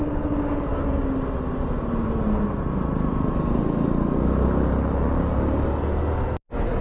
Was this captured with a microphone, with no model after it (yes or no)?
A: yes